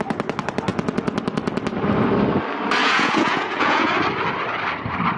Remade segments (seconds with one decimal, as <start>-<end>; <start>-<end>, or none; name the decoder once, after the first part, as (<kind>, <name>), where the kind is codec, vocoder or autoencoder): 2.8-3.9 (vocoder, Vocos)